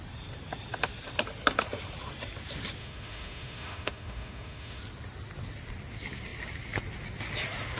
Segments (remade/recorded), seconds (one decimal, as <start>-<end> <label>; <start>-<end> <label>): 0.0-2.8 recorded; 2.8-4.8 remade; 4.8-7.8 recorded